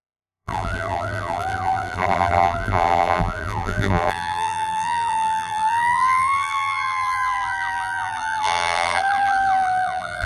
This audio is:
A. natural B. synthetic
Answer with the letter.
B